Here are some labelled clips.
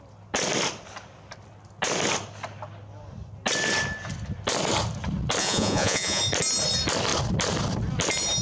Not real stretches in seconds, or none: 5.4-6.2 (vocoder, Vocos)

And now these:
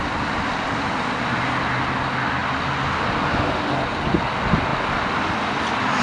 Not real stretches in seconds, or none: none